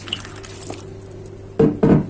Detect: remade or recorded recorded